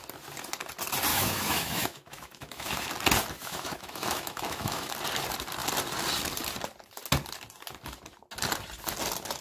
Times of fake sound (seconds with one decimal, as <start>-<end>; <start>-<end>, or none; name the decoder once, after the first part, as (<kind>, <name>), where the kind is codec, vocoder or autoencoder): 1.1-2.9 (autoencoder, DAC-VAE); 3.4-4.9